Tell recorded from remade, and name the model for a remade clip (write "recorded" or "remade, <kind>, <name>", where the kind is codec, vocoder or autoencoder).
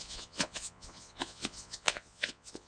remade, vocoder, Vocos